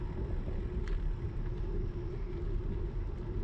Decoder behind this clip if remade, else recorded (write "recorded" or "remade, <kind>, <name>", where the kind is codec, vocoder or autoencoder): recorded